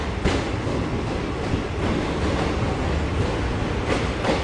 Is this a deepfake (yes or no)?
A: no